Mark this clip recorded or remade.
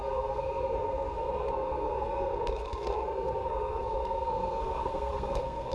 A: remade